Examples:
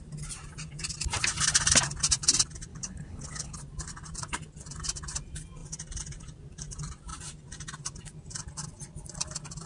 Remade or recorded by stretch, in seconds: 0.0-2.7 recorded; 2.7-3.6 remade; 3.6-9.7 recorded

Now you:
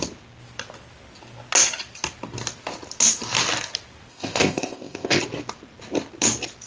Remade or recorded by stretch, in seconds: 0.0-4.1 recorded; 4.1-5.2 remade; 5.2-6.7 recorded

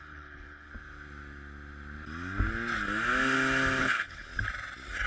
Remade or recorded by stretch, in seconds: 0.0-0.7 remade; 0.7-3.8 recorded; 3.8-4.3 remade; 4.3-5.1 recorded